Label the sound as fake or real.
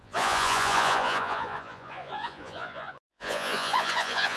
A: fake